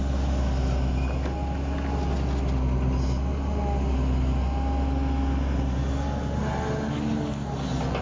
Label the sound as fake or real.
real